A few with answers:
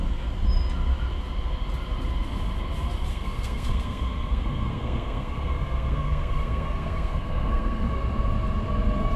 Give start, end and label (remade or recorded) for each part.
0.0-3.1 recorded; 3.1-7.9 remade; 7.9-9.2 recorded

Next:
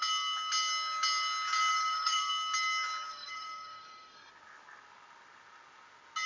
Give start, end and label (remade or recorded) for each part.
0.0-1.7 recorded; 1.7-2.3 remade; 2.3-3.1 recorded; 3.1-4.3 remade; 4.3-6.3 recorded